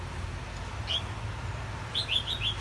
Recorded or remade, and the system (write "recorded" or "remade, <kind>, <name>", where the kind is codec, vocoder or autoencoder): recorded